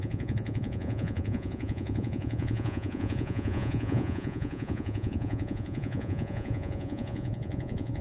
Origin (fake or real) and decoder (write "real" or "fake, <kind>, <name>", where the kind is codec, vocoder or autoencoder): fake, vocoder, Vocos